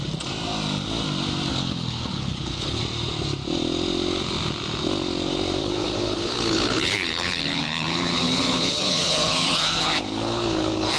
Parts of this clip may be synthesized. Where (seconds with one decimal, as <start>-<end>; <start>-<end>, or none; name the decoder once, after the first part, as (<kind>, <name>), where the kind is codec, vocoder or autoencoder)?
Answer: 1.5-2.8 (codec, HILCodec); 5.6-11.0